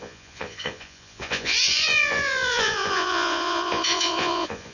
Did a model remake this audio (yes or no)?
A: yes